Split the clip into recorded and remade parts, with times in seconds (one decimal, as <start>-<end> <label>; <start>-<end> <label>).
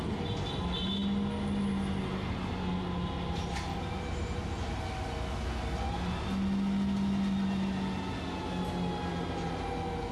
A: 0.0-10.1 recorded